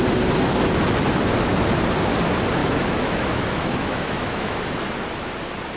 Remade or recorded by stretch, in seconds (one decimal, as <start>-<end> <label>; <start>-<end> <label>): 0.0-2.6 recorded; 2.6-4.6 remade; 4.6-5.8 recorded